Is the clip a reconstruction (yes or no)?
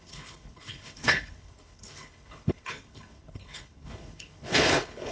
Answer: yes